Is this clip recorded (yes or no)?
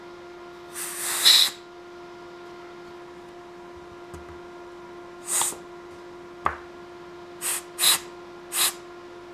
yes